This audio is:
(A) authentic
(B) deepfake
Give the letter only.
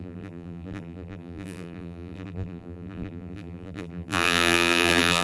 B